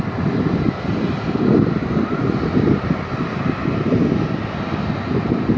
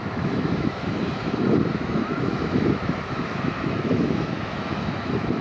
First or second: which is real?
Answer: first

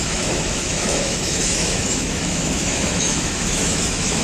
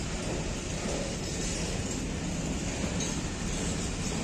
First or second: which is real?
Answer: second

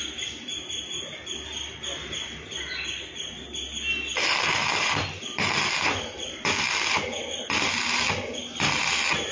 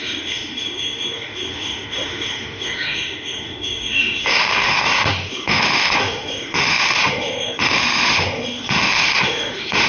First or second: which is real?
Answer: first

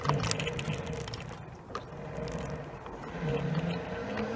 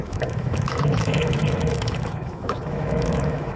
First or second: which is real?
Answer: first